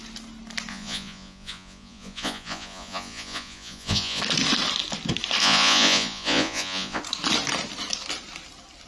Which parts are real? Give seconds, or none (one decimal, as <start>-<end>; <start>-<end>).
0.0-0.7; 4.2-5.4; 7.0-8.9